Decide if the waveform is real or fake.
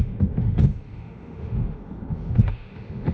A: fake